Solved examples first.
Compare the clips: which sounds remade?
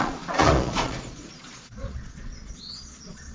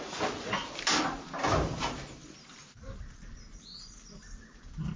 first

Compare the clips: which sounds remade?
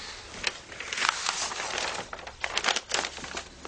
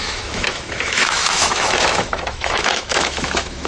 second